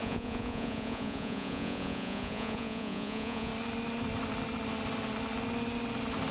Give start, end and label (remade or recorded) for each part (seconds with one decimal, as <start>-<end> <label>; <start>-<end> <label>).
0.0-3.5 remade; 3.5-6.3 recorded